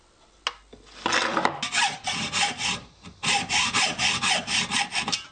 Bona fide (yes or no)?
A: yes